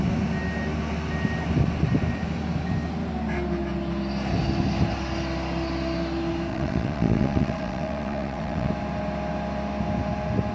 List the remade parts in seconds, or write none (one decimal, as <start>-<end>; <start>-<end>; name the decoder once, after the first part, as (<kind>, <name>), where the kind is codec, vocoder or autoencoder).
6.5-8.7 (vocoder, WaveNeXt)